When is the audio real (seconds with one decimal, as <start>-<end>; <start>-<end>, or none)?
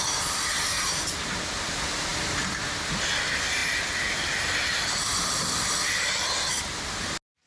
0.0-7.5